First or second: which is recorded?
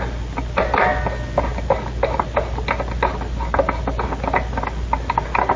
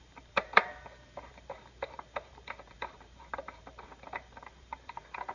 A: first